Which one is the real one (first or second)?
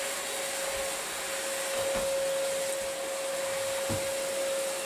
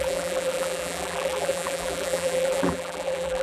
first